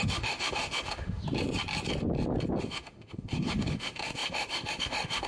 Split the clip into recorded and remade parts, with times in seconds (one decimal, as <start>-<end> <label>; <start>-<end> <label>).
0.0-1.2 remade; 1.2-2.6 recorded; 2.6-5.3 remade